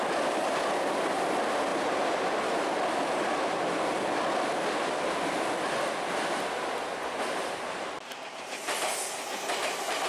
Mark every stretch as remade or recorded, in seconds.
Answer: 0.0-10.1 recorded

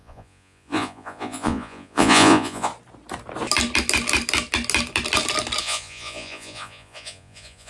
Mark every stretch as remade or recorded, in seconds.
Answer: 0.0-2.7 remade; 2.7-5.6 recorded; 5.6-7.7 remade

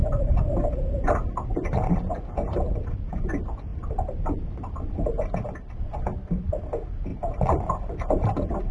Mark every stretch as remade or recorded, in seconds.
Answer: 0.0-3.7 recorded; 3.7-4.9 remade; 4.9-7.1 recorded; 7.1-8.7 remade